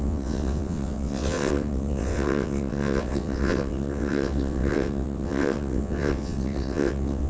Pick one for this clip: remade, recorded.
remade